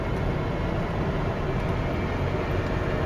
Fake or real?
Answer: real